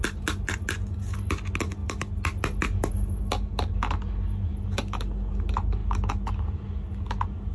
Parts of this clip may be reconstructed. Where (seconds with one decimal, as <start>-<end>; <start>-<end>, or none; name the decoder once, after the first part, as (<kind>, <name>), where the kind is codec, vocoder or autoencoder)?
none